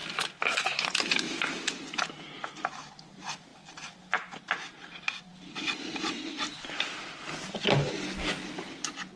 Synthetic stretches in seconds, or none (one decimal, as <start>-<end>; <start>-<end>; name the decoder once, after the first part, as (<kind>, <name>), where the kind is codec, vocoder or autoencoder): none

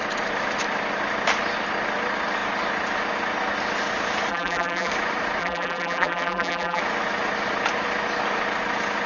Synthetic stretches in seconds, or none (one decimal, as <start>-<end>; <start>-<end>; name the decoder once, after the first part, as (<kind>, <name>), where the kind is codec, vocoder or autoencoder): 4.3-4.9 (vocoder, BigVGAN v2); 5.4-6.8

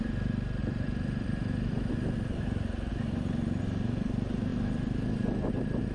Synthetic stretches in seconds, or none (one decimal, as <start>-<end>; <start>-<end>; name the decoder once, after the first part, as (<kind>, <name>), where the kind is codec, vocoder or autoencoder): 0.6-1.7 (vocoder, BigVGAN v2); 2.9-3.6; 4.5-5.5

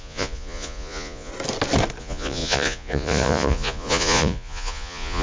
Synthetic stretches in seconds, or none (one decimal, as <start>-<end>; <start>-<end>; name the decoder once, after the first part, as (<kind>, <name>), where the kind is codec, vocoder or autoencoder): 0.0-1.3 (vocoder, Vocos); 2.0-5.2

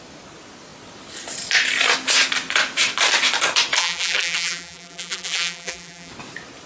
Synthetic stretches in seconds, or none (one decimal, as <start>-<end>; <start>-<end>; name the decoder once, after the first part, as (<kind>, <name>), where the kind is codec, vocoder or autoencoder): 3.8-6.1 (vocoder, BigVGAN v2)